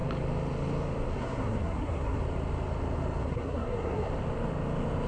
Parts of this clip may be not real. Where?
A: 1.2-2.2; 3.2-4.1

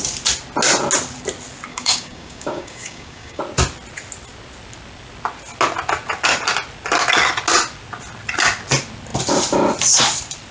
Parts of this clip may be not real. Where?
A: 1.7-3.4

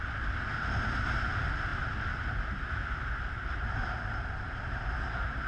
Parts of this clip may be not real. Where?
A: none

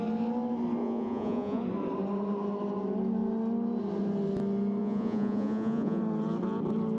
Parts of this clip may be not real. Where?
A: 0.8-1.6; 4.8-6.0

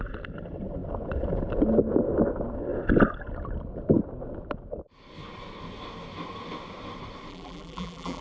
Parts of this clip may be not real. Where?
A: 7.3-8.2

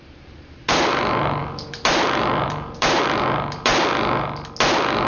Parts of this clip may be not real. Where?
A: 0.0-3.7

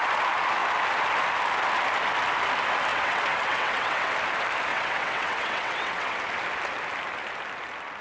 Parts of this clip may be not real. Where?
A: 2.9-4.1; 4.7-6.2